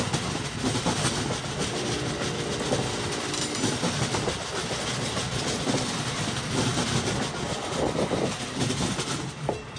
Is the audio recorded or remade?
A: recorded